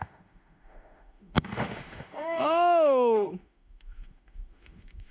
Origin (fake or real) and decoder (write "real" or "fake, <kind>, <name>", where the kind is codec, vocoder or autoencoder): fake, autoencoder, DAC-VAE